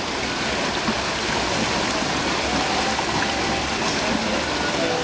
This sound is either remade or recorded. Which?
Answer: recorded